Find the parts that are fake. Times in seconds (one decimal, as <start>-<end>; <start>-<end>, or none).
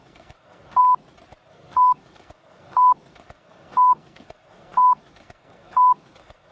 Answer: 0.0-0.8; 1.5-6.5